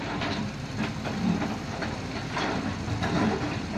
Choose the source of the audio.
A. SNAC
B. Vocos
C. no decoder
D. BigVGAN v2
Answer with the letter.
D